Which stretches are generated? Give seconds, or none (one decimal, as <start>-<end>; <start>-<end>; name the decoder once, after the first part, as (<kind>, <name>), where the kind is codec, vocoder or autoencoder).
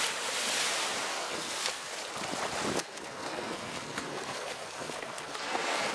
1.1-1.9 (codec, SNAC); 2.8-5.9